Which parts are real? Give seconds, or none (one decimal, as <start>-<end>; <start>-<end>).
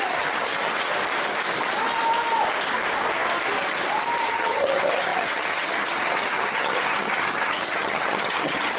0.9-4.2